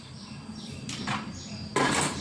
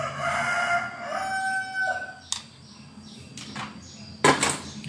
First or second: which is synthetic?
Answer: first